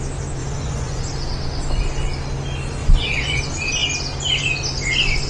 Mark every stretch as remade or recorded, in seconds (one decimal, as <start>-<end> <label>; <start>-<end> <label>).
0.0-0.4 recorded; 0.4-1.0 remade; 1.0-2.8 recorded; 2.8-3.4 remade; 3.4-5.3 recorded